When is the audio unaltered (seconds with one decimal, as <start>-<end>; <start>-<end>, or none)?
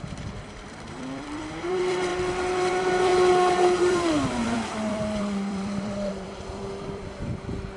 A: 3.1-3.8